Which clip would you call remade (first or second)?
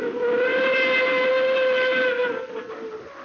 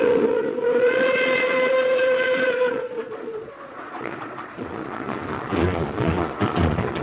second